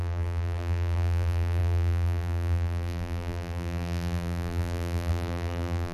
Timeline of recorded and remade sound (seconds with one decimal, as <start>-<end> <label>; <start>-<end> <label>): 0.0-5.9 remade